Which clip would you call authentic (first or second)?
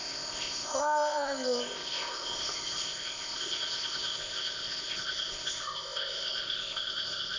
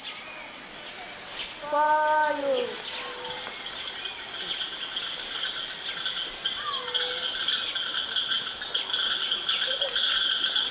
second